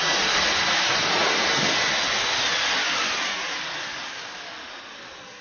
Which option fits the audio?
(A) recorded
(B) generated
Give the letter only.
A